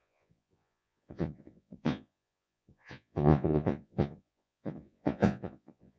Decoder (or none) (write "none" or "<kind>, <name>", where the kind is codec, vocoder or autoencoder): vocoder, Vocos